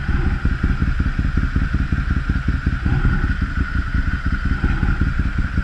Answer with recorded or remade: recorded